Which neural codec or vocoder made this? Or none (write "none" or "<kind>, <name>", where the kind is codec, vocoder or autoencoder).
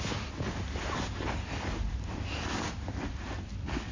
none